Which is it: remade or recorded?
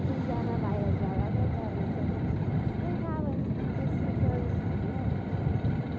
recorded